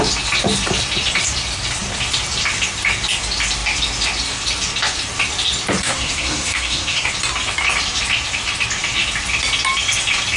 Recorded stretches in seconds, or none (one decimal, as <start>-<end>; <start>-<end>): 0.0-5.8; 7.1-10.4